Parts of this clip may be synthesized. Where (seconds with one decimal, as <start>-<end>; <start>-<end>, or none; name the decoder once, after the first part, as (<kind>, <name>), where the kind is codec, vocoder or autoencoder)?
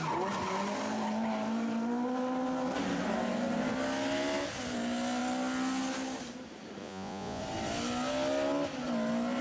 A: 6.8-7.4 (vocoder, Vocos)